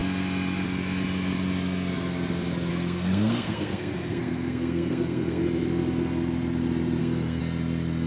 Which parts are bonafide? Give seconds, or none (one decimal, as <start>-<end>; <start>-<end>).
0.0-2.7; 5.4-7.0; 7.4-8.1